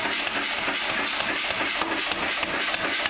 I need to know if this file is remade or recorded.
recorded